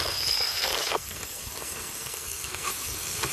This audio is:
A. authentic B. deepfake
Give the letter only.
B